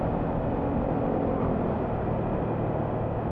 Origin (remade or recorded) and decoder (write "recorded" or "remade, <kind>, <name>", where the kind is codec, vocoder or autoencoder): recorded